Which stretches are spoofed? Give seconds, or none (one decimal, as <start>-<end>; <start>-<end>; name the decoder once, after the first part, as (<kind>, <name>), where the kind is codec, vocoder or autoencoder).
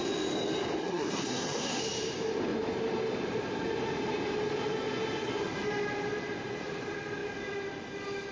0.8-1.8 (codec, SNAC)